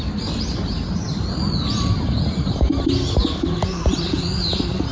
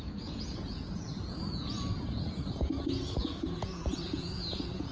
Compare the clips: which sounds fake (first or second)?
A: second